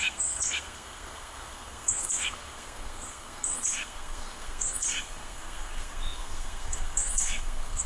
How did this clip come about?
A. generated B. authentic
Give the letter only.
A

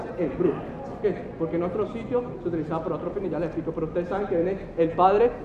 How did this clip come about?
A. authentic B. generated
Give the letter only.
A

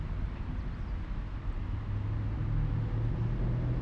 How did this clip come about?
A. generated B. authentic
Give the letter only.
B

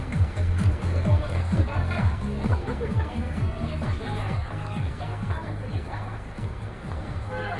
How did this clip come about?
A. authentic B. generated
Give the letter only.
B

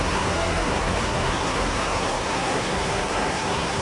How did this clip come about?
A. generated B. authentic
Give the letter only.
A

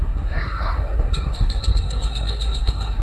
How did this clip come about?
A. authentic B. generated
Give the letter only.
B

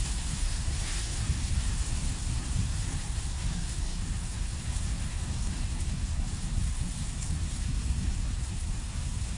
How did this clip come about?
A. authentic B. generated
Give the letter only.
B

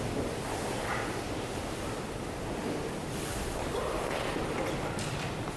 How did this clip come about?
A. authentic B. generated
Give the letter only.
A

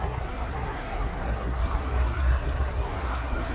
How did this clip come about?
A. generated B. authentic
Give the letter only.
A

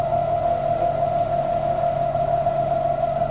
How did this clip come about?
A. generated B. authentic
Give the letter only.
B